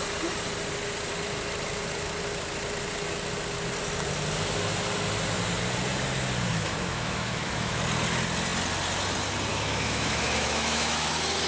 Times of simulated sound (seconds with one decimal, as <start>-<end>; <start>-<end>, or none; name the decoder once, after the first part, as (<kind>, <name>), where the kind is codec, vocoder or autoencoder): 6.5-7.8 (autoencoder, DAC-VAE); 9.5-11.1